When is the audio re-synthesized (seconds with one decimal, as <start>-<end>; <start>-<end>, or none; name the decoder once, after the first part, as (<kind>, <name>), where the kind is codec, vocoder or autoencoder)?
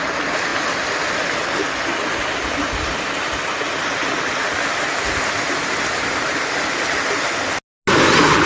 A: none